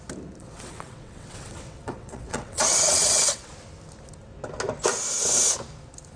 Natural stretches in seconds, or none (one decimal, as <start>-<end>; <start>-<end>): 0.0-0.4; 3.5-6.2